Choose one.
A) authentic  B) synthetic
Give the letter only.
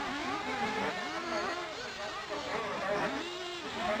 A